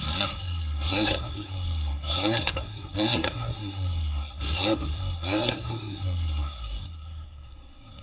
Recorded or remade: remade